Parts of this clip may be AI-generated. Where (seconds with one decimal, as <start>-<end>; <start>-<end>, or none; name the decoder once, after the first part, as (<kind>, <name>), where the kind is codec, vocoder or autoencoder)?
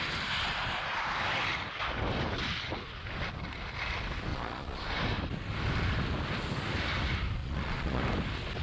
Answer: 4.3-4.8 (vocoder, Vocos); 7.4-8.0